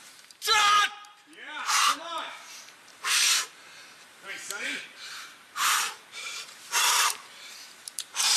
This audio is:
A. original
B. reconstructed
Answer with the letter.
B